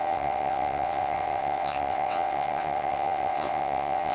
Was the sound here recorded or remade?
remade